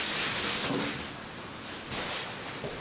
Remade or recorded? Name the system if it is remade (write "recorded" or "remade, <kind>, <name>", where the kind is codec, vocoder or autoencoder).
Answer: recorded